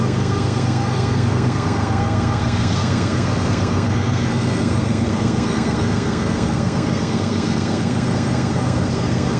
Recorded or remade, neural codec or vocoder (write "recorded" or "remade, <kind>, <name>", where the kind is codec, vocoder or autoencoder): remade, codec, SNAC